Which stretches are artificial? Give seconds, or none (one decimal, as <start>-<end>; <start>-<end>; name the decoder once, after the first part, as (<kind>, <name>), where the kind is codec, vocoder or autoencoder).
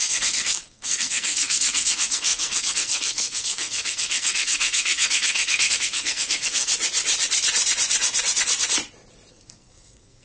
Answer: 0.0-6.7 (codec, SNAC); 9.3-10.2